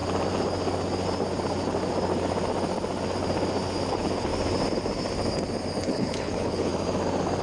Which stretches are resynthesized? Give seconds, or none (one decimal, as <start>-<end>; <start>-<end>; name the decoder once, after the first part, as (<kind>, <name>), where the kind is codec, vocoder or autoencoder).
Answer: 3.9-4.3 (codec, HILCodec); 5.8-6.7